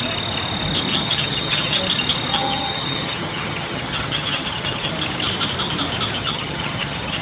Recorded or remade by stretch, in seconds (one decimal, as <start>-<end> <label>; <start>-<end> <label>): 0.0-0.9 recorded; 0.9-1.8 remade; 1.8-2.3 recorded; 2.3-4.9 remade; 4.9-6.2 recorded; 6.2-7.2 remade